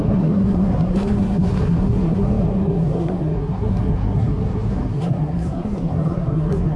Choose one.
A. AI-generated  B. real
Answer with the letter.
A